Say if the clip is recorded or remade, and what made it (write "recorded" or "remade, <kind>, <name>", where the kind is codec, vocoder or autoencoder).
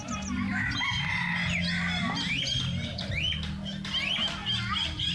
recorded